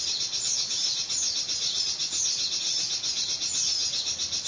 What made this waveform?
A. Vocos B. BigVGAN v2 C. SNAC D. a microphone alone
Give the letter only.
D